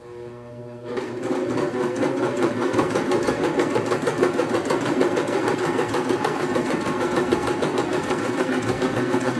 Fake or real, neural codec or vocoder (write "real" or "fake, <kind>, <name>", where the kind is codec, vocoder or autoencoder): fake, codec, SNAC